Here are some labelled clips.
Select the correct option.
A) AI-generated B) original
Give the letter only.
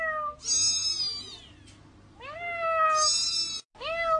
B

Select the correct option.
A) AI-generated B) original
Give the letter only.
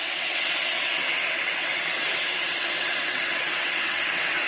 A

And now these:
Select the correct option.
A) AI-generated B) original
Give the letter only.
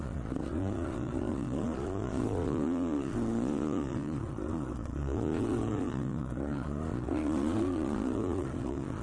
A